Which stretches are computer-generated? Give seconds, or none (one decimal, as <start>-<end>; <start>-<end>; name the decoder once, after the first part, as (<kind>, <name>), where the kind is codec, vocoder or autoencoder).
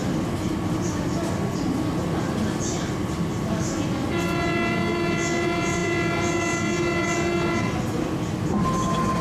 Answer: none